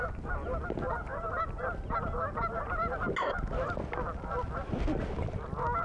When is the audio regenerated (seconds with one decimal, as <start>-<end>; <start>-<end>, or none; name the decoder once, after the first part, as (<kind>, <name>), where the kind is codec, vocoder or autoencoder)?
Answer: none